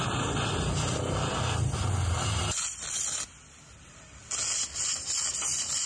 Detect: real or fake real